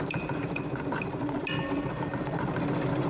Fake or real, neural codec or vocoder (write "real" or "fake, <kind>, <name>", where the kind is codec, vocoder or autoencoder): real